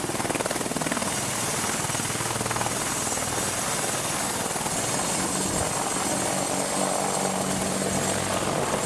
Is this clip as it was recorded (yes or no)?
yes